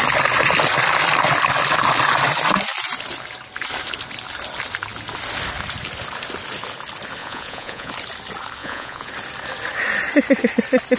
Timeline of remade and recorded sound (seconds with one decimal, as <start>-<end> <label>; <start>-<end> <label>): 0.0-7.2 recorded; 7.2-7.9 remade; 7.9-8.6 recorded; 8.6-9.1 remade; 9.1-11.0 recorded